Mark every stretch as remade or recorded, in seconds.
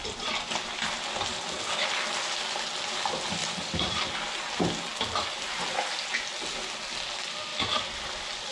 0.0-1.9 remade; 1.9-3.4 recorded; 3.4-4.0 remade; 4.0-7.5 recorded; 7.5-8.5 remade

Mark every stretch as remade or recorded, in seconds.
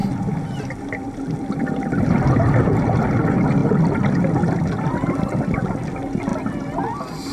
0.0-7.3 recorded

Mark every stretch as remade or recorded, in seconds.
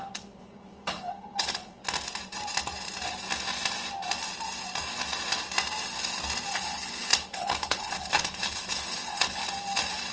0.0-1.8 remade; 1.8-6.5 recorded; 6.5-9.4 remade; 9.4-10.1 recorded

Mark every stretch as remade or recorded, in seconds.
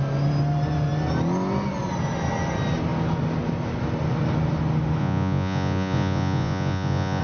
0.0-5.0 recorded; 5.0-7.2 remade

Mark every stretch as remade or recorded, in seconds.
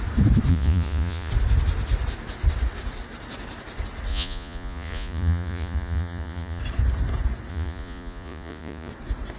0.0-0.5 recorded; 0.5-1.3 remade; 1.3-4.1 recorded; 4.1-6.6 remade; 6.6-7.5 recorded; 7.5-8.9 remade; 8.9-9.4 recorded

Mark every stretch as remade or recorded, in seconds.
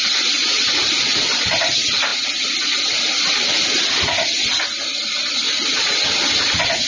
0.0-6.9 recorded